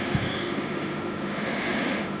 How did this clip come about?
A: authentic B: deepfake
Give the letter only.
B